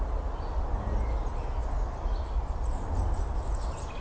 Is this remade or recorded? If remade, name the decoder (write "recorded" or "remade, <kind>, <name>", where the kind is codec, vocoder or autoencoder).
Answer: recorded